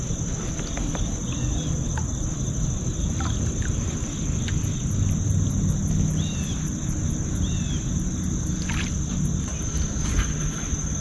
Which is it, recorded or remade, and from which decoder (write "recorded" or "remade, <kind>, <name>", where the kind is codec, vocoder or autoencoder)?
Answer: recorded